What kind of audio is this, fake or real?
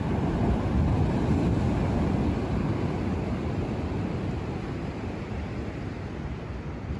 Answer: real